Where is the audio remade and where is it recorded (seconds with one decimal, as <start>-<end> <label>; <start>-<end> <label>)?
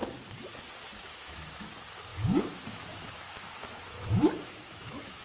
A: 0.0-1.1 recorded; 1.1-1.7 remade; 1.7-2.1 recorded; 2.1-5.2 remade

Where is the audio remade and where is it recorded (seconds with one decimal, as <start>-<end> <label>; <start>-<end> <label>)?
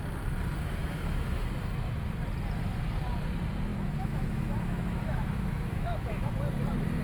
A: 0.0-0.8 recorded; 0.8-1.5 remade; 1.5-3.7 recorded; 3.7-6.3 remade; 6.3-7.0 recorded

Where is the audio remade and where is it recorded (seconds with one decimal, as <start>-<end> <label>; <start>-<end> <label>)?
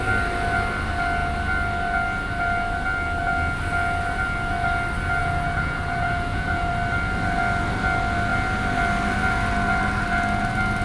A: 0.0-5.2 recorded; 5.2-6.7 remade; 6.7-10.8 recorded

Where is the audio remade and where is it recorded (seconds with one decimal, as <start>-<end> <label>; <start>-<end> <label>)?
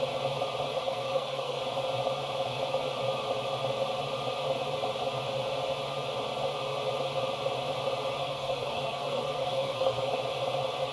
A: 0.0-0.8 recorded; 0.8-1.6 remade; 1.6-8.2 recorded; 8.2-10.1 remade; 10.1-10.9 recorded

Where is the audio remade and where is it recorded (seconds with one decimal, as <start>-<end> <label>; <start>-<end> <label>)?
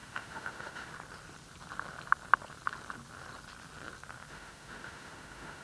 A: 0.0-0.9 remade; 0.9-4.3 recorded; 4.3-5.6 remade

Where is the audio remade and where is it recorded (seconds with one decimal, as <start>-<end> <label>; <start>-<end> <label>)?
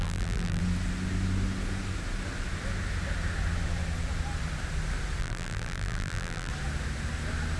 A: 0.0-0.6 remade; 0.6-5.2 recorded; 5.2-6.5 remade; 6.5-7.6 recorded